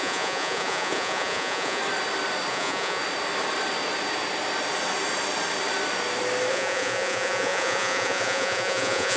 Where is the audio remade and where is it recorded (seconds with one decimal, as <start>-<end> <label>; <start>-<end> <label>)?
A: 0.0-1.8 remade; 1.8-2.5 recorded; 2.5-3.0 remade; 3.0-6.5 recorded; 6.5-9.2 remade

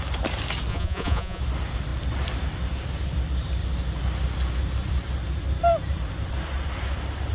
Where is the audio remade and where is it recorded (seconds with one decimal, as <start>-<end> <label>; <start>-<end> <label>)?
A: 0.0-0.7 recorded; 0.7-1.4 remade; 1.4-7.3 recorded

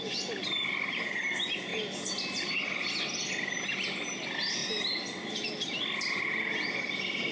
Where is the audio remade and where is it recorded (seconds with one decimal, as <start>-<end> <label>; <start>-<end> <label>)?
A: 0.0-7.3 recorded

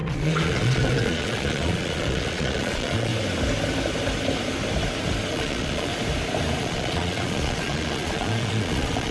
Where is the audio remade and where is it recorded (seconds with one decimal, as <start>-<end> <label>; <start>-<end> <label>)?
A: 0.0-3.1 remade; 3.1-5.3 recorded; 5.3-5.9 remade; 5.9-6.6 recorded; 6.6-9.1 remade

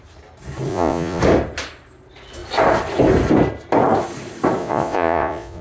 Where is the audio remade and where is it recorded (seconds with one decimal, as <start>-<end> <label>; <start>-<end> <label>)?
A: 0.0-0.7 recorded; 0.7-1.2 remade; 1.2-4.6 recorded; 4.6-5.6 remade

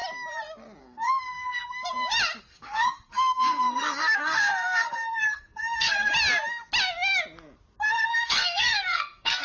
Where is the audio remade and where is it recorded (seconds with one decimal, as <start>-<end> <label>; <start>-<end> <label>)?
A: 0.0-0.8 recorded; 0.8-1.6 remade; 1.6-2.4 recorded; 2.4-6.1 remade; 6.1-7.9 recorded; 7.9-9.4 remade

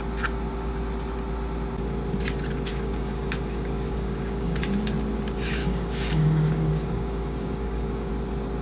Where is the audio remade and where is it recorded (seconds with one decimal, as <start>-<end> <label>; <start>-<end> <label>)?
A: 0.0-2.7 recorded; 2.7-4.6 remade; 4.6-5.6 recorded; 5.6-8.1 remade; 8.1-8.6 recorded